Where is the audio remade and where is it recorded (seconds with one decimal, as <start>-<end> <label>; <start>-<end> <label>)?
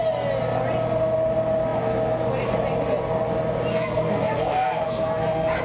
0.0-3.7 recorded; 3.7-5.6 remade